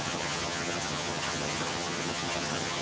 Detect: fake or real fake